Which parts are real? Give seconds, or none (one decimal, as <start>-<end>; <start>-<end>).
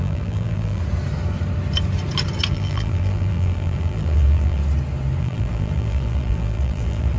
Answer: 0.8-2.5; 4.6-5.2